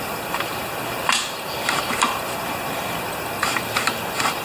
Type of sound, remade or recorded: remade